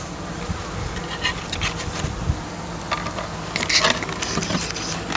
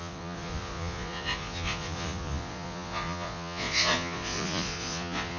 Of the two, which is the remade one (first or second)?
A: second